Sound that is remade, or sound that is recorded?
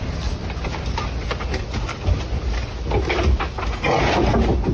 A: recorded